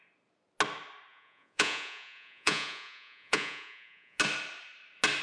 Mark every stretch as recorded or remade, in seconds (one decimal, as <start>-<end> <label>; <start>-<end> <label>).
0.0-1.1 recorded; 1.1-4.2 remade; 4.2-5.2 recorded